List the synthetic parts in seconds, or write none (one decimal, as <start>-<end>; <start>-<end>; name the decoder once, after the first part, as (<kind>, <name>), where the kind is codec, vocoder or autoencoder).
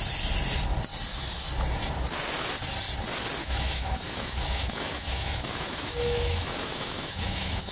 3.4-7.7 (autoencoder, DAC-VAE)